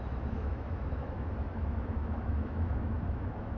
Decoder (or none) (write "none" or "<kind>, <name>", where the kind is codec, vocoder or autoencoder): autoencoder, DAC-VAE